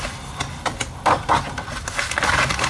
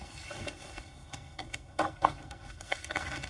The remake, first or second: second